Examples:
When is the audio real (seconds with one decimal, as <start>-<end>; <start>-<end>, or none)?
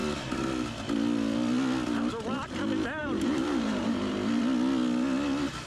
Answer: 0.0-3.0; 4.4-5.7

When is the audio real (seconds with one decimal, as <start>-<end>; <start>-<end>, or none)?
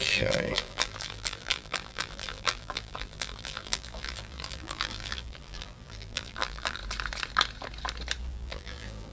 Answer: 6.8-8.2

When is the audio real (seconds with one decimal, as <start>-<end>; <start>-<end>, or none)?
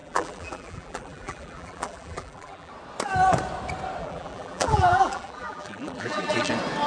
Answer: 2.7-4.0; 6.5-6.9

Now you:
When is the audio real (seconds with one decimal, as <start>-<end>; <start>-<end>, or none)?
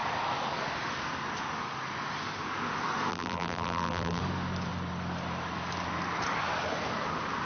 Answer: 0.0-3.1; 4.2-7.5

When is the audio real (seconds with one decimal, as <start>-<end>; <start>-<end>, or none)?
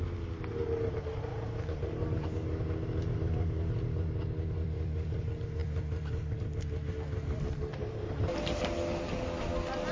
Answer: 0.0-1.3; 2.3-7.7; 8.6-9.9